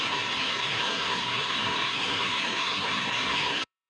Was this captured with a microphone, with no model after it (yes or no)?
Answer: no